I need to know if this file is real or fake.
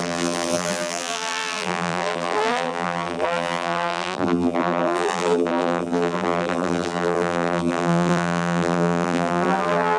fake